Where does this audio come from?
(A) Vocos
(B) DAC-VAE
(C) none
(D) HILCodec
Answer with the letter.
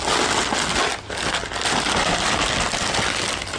C